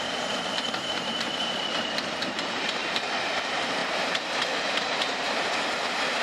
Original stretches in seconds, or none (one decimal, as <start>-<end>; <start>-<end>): 2.8-3.4